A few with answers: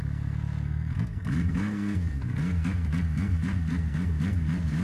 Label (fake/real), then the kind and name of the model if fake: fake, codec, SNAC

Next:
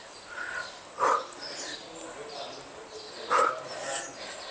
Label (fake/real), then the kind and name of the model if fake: real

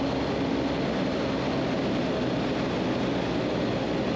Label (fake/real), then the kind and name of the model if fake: real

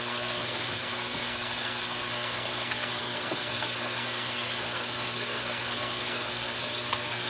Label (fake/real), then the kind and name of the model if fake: fake, codec, SNAC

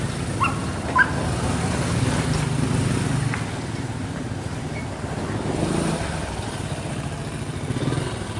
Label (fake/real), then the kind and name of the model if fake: real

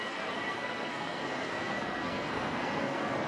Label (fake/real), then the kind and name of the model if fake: fake, codec, SNAC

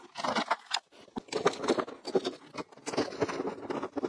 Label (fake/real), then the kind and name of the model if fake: real